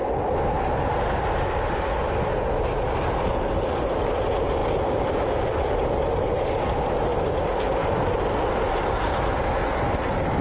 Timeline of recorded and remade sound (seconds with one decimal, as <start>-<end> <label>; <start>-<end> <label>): 0.0-2.9 recorded; 2.9-7.1 remade; 7.1-8.5 recorded; 8.5-9.6 remade; 9.6-10.4 recorded